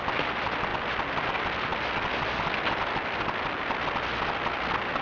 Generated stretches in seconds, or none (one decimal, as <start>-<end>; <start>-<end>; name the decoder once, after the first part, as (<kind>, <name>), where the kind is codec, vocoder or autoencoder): none